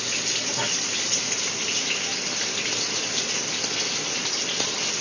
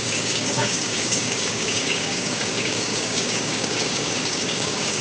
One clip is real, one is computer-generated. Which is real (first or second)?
first